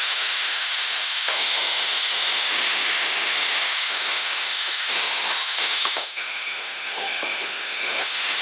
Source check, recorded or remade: remade